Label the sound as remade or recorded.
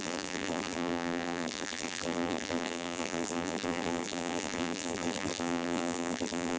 remade